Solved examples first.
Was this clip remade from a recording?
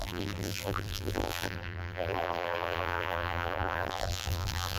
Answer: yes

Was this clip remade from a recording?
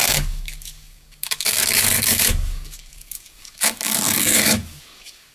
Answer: yes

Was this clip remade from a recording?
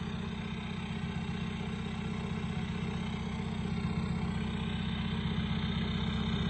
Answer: no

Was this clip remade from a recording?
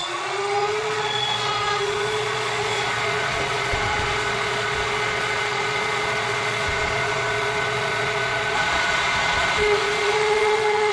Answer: yes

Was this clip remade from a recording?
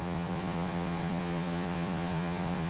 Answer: yes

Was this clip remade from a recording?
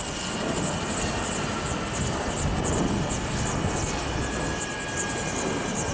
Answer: no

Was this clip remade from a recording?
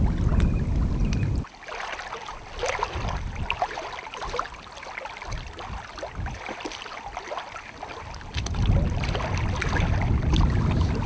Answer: no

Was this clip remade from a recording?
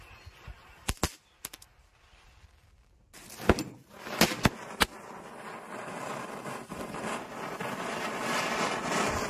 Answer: no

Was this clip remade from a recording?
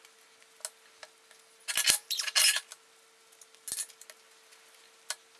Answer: no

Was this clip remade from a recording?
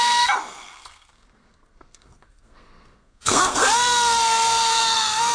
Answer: yes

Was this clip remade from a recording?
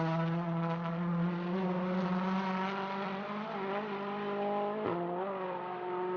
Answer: no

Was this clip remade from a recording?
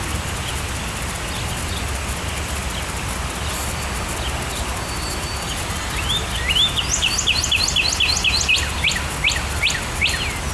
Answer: no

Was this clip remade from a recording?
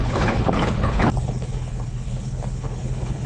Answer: yes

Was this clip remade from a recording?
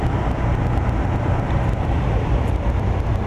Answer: yes